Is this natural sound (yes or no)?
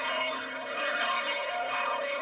no